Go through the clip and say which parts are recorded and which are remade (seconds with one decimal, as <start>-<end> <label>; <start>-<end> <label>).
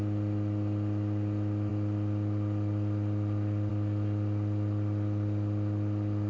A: 0.0-6.3 recorded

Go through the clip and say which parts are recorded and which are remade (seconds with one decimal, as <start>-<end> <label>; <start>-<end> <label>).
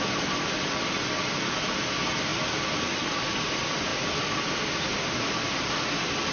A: 0.0-2.3 recorded; 2.3-3.2 remade; 3.2-3.9 recorded; 3.9-4.4 remade; 4.4-4.9 recorded; 4.9-6.3 remade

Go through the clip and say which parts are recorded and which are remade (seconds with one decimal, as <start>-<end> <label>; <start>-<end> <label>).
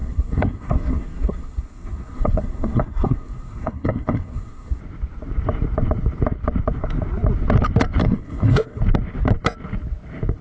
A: 0.0-4.8 remade; 4.8-8.0 recorded; 8.0-8.8 remade; 8.8-10.4 recorded